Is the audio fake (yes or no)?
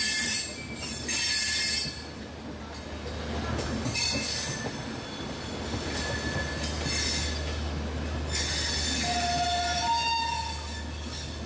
no